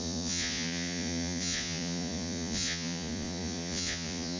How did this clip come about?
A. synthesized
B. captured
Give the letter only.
A